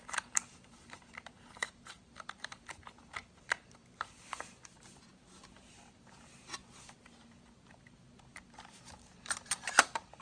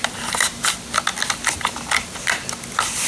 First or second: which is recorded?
second